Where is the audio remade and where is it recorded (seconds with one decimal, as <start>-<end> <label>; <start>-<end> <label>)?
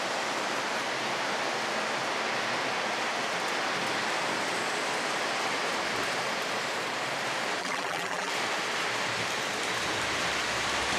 0.0-7.6 recorded; 7.6-8.3 remade; 8.3-11.0 recorded